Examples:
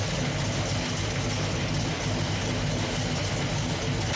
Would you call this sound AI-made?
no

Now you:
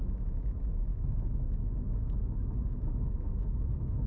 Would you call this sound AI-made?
yes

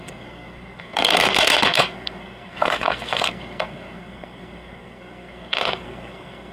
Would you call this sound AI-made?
yes